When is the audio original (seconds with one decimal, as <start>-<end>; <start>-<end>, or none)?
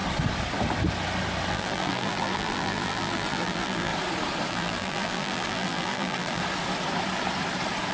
0.0-1.5; 3.9-4.5; 6.4-7.9